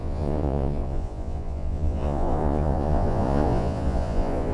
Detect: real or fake fake